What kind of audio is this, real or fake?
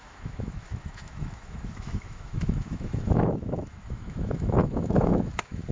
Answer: fake